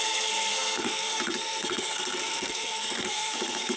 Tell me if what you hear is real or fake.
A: fake